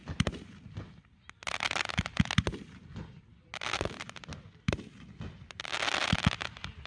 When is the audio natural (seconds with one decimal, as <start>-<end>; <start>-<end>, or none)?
0.0-6.9